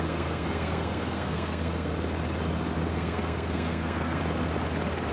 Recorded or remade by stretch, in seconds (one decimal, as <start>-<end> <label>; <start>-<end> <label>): 0.0-1.9 remade; 1.9-2.9 recorded; 2.9-4.2 remade; 4.2-5.1 recorded